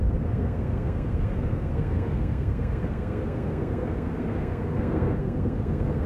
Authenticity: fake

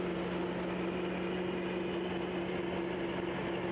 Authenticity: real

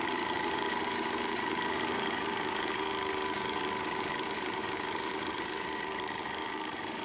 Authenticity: fake